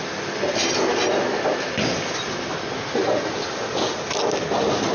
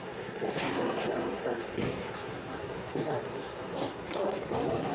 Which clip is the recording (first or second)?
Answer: first